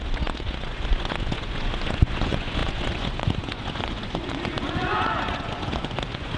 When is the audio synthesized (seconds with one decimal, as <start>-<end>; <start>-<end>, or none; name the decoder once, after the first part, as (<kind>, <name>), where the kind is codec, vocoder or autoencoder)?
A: 0.0-6.4 (vocoder, Vocos)

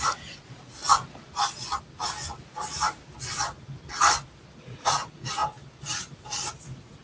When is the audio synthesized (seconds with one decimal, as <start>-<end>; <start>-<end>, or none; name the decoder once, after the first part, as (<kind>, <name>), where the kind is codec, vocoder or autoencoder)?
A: 0.0-0.8 (vocoder, Vocos); 4.6-5.4; 6.5-7.0

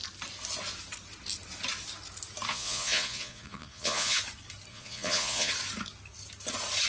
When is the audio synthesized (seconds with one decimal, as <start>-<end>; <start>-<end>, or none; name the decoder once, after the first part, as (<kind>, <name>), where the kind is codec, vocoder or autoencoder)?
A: 2.5-4.2 (vocoder, Vocos); 4.7-5.5

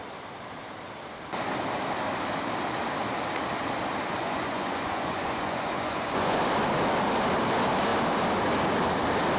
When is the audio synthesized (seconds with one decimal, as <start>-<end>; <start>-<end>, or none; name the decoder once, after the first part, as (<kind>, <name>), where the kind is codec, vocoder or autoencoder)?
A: 4.2-6.4 (vocoder, Vocos)

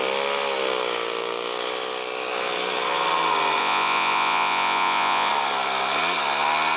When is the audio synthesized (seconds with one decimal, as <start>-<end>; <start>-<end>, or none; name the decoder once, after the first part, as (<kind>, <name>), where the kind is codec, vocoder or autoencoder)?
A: 3.6-5.3 (vocoder, Vocos)

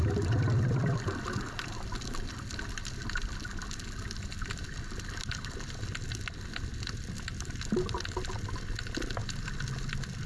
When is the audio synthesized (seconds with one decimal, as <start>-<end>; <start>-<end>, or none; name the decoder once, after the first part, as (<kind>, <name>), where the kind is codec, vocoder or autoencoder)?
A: none